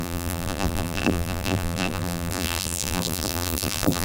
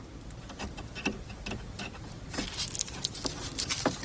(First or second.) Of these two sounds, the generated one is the first